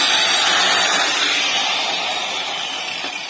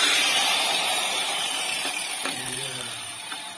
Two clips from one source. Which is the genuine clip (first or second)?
first